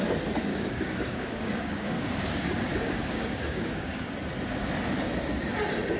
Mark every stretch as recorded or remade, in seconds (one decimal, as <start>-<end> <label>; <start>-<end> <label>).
0.0-0.5 recorded; 0.5-4.1 remade; 4.1-6.0 recorded